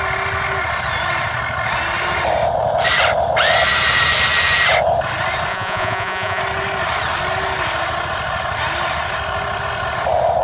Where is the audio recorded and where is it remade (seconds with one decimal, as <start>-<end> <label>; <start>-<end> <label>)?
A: 0.0-5.5 recorded; 5.5-6.4 remade; 6.4-10.4 recorded